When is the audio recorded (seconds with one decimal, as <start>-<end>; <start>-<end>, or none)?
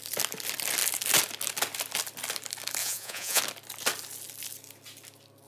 0.0-2.8; 3.4-5.5